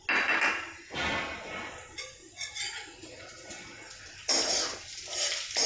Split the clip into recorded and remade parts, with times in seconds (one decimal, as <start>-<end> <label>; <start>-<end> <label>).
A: 0.0-2.2 recorded; 2.2-4.0 remade; 4.0-5.7 recorded